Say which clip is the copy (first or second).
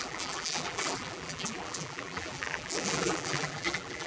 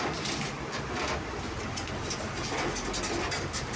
first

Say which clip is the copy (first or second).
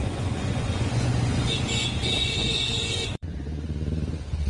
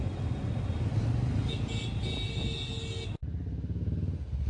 first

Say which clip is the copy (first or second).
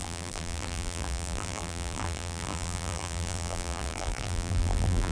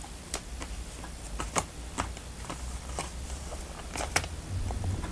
first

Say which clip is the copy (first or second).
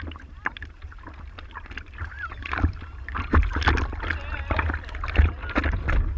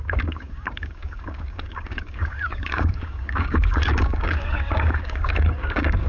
second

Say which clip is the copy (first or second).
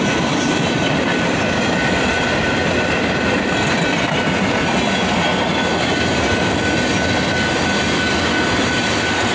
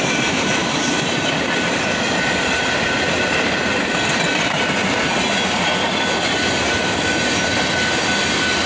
second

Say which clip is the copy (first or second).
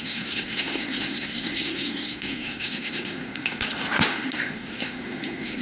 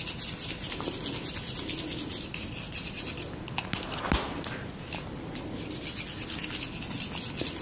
first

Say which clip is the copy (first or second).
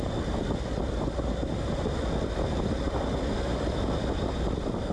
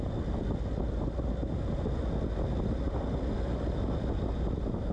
first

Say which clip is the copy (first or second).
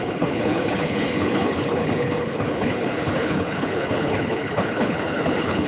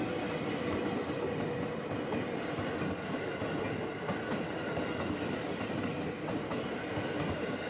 first